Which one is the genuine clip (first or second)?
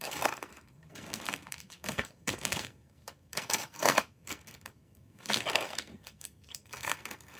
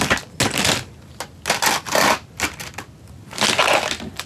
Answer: second